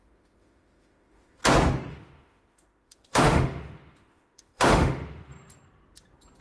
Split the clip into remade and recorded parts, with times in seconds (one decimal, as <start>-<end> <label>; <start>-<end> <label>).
0.0-1.4 remade; 1.4-1.9 recorded; 1.9-5.3 remade; 5.3-6.4 recorded